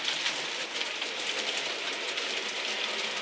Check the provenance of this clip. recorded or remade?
recorded